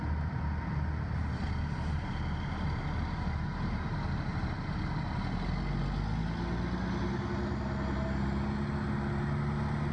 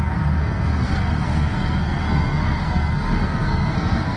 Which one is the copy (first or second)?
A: second